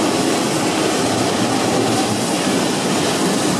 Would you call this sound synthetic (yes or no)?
no